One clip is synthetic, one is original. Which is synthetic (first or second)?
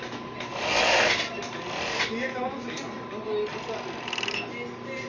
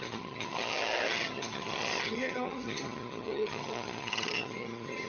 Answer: second